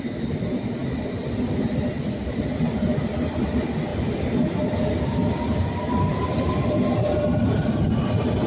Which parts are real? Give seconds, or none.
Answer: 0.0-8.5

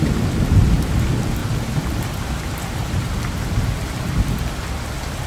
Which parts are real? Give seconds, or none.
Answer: 0.0-5.3

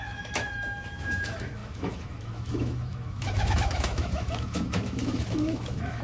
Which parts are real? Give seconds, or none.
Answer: none

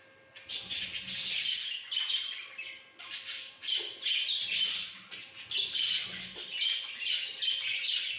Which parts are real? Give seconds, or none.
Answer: 0.0-8.2

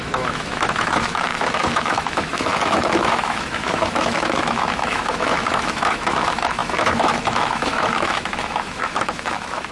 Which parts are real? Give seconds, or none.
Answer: none

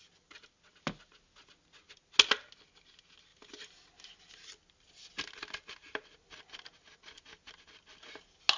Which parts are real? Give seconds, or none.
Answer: 0.0-8.6

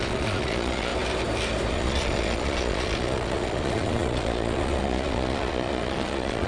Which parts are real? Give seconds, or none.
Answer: 0.9-1.7